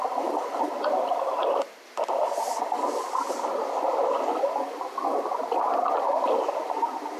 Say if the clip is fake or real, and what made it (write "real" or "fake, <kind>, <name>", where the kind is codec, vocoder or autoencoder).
real